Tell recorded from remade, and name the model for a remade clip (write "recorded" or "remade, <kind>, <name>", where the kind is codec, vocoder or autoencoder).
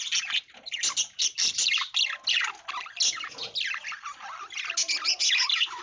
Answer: recorded